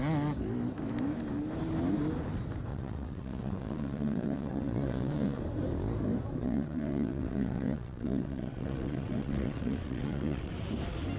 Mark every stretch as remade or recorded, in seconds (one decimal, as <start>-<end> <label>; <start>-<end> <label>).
0.0-2.7 recorded; 2.7-5.4 remade; 5.4-6.4 recorded; 6.4-10.5 remade; 10.5-11.2 recorded